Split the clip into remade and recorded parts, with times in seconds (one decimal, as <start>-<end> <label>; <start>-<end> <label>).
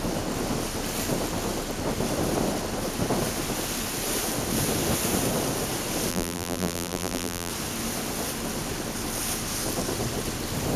0.0-6.1 recorded; 6.1-7.5 remade; 7.5-10.8 recorded